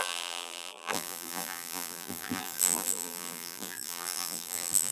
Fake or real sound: fake